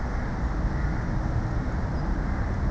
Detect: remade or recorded recorded